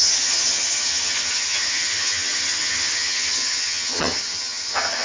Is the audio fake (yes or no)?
yes